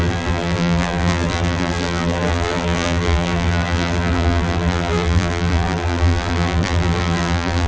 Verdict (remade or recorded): remade